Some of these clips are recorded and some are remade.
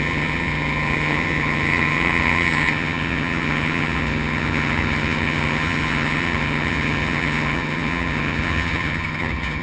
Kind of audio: remade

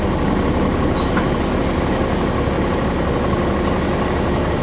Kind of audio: recorded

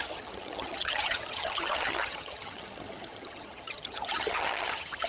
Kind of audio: remade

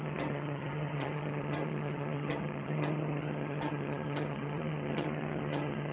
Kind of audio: remade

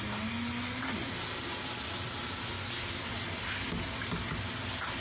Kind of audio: recorded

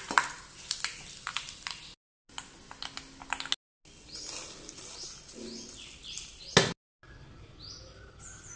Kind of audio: recorded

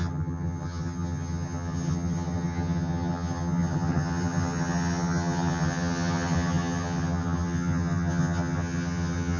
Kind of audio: remade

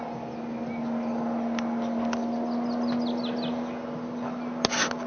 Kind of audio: recorded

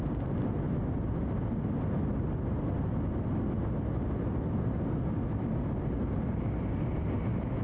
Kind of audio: recorded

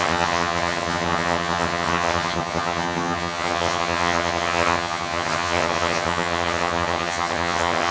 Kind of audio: remade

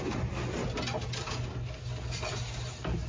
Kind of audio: recorded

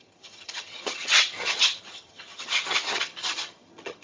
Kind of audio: remade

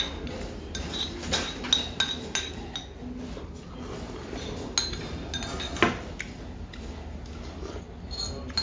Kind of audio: recorded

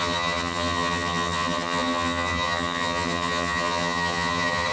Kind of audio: remade